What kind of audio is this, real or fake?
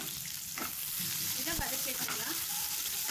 real